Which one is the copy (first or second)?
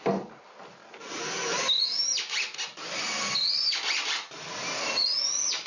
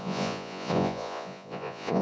second